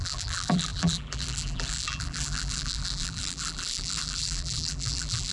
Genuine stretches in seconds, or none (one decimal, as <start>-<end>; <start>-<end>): none